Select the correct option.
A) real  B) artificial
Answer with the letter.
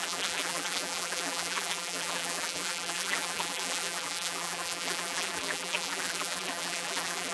B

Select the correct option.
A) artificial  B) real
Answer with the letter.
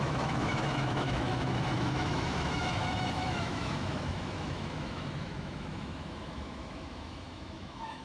A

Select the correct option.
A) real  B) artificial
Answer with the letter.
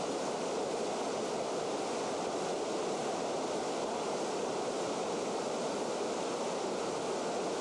A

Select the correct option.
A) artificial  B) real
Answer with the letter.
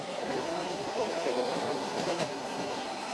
A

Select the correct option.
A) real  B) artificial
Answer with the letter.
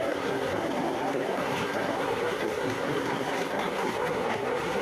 B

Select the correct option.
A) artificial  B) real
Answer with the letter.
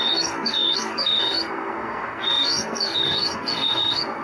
A